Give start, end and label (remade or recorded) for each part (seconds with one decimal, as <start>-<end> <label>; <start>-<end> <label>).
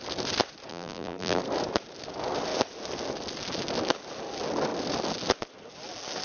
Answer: 0.0-0.7 recorded; 0.7-1.4 remade; 1.4-6.2 recorded